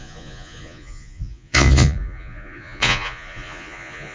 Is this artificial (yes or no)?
yes